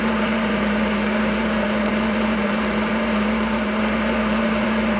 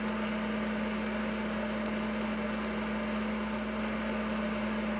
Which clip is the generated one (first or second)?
first